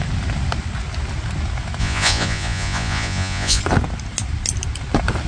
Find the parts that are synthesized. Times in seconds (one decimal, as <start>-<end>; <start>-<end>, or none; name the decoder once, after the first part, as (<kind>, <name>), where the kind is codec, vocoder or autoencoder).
1.8-3.6 (vocoder, Vocos)